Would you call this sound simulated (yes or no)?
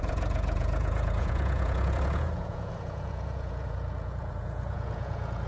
yes